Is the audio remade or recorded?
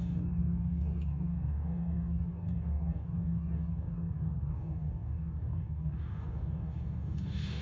remade